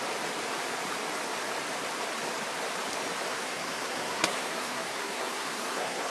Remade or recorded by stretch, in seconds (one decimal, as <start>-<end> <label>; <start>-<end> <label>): 0.0-3.3 recorded; 3.3-6.1 remade